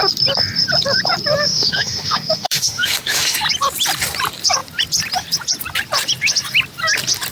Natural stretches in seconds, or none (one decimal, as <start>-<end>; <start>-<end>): 0.0-1.5; 3.4-7.3